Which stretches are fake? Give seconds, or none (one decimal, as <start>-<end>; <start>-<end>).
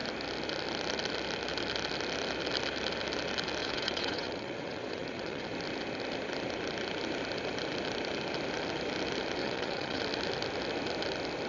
3.6-5.4; 9.4-10.0